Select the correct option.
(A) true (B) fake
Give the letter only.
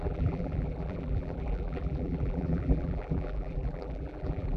B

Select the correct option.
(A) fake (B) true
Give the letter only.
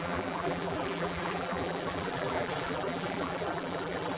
A